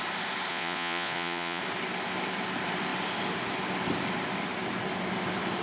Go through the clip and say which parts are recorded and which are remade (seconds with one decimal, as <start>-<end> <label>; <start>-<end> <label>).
0.0-0.5 recorded; 0.5-1.6 remade; 1.6-5.6 recorded